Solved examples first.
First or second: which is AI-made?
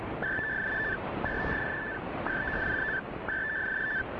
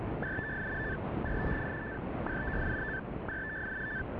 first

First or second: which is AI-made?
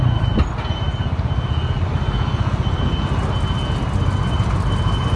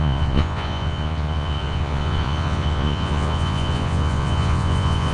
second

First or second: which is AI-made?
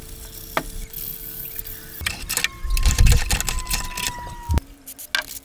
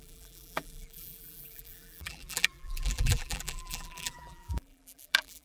second